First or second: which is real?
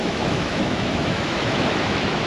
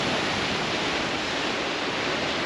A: second